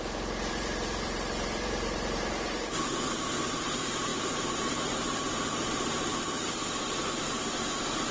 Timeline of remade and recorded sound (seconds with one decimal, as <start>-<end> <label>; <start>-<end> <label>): 0.0-8.1 remade